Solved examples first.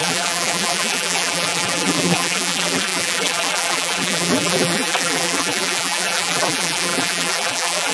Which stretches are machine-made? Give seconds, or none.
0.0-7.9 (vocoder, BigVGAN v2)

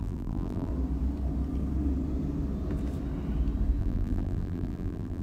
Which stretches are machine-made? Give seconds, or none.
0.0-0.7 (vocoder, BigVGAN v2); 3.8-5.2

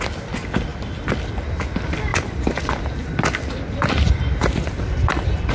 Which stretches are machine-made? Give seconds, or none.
0.7-1.6 (vocoder, BigVGAN v2); 2.1-5.5

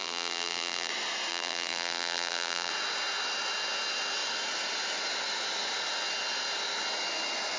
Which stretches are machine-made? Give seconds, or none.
0.0-0.9 (vocoder, BigVGAN v2); 1.3-2.7